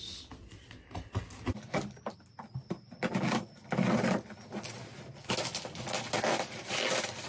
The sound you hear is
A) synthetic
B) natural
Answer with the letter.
B